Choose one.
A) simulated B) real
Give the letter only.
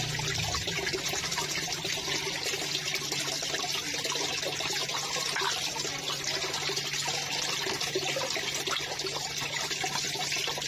B